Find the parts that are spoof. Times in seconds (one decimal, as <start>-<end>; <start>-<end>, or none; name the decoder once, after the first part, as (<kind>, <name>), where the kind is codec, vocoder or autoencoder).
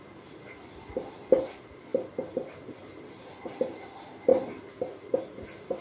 none